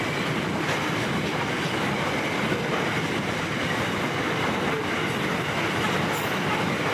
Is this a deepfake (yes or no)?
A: no